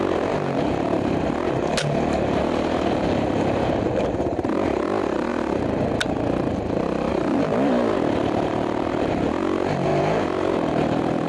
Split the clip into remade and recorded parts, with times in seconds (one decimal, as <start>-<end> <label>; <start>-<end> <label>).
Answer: 0.0-11.3 recorded